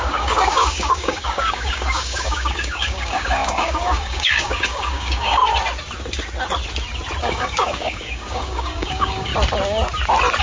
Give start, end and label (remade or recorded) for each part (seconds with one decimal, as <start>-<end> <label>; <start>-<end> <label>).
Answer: 0.0-5.4 remade; 5.4-7.2 recorded; 7.2-9.3 remade; 9.3-10.4 recorded